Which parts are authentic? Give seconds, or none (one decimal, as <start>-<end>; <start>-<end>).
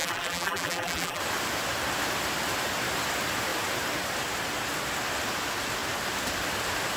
1.2-7.0